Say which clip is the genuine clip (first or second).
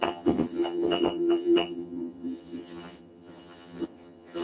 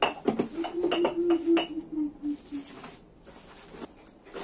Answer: second